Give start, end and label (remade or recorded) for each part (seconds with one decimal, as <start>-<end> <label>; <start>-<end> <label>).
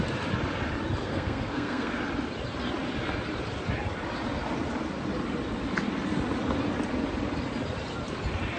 0.0-1.0 recorded; 1.0-2.0 remade; 2.0-8.6 recorded